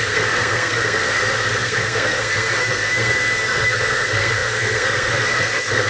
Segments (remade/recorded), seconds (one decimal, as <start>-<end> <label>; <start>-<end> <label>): 0.0-5.9 remade